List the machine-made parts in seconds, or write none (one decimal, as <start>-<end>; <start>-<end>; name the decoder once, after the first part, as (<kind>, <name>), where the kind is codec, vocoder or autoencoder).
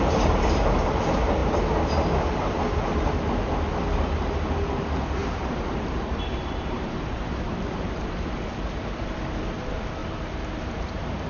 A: 5.2-8.2 (vocoder, BigVGAN v2); 10.0-11.3